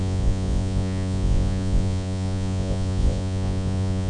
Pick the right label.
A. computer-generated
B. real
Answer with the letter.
A